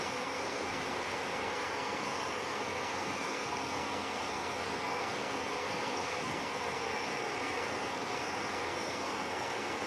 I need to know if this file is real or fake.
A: fake